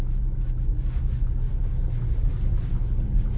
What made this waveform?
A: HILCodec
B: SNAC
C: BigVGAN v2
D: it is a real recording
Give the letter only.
D